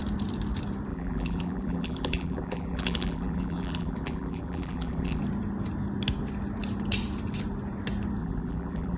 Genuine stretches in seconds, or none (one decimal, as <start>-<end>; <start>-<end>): 0.0-0.9; 5.2-8.2